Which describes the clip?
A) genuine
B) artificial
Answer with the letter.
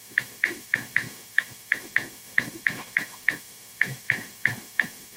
B